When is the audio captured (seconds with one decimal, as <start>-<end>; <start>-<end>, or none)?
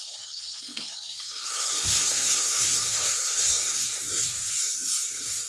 none